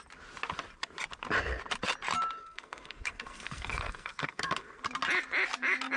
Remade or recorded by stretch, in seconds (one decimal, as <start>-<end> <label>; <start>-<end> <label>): 0.0-2.4 recorded; 2.4-4.8 remade; 4.8-6.0 recorded